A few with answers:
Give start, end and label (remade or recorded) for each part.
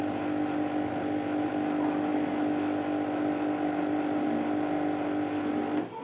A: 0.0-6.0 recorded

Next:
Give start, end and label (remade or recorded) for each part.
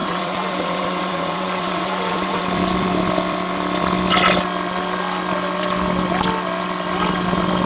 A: 0.0-2.4 remade; 2.4-7.7 recorded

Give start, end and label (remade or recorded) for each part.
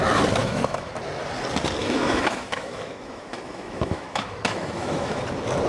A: 0.0-0.4 recorded; 0.4-0.9 remade; 0.9-1.8 recorded; 1.8-5.2 remade; 5.2-5.7 recorded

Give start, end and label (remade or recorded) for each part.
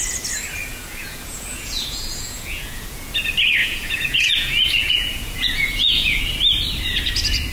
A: 0.0-0.7 recorded; 0.7-3.1 remade; 3.1-3.6 recorded; 3.6-6.2 remade; 6.2-7.5 recorded